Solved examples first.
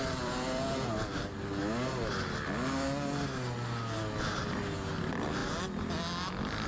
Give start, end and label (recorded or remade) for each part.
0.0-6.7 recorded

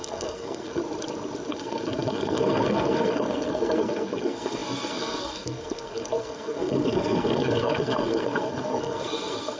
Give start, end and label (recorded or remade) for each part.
0.0-0.8 remade; 0.8-1.5 recorded; 1.5-9.6 remade

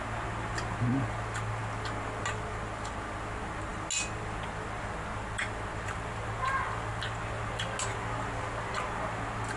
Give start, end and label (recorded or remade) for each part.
0.0-9.6 recorded

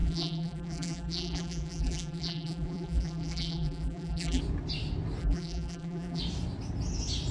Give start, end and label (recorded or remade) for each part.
0.0-4.4 remade; 4.4-5.2 recorded; 5.2-6.2 remade; 6.2-7.3 recorded

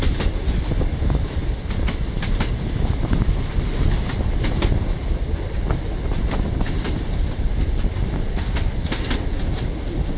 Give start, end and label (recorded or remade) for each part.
0.0-10.2 recorded

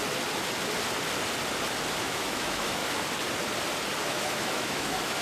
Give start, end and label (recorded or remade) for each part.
0.0-2.0 recorded; 2.0-2.8 remade; 2.8-4.0 recorded; 4.0-5.2 remade

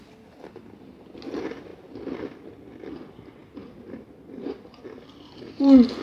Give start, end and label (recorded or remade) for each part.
0.0-3.6 recorded; 3.6-4.8 remade; 4.8-6.0 recorded

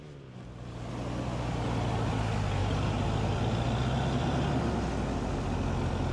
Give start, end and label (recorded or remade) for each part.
0.0-2.6 recorded; 2.6-3.4 remade; 3.4-6.1 recorded